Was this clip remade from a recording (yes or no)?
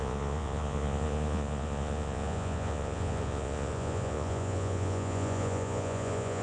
yes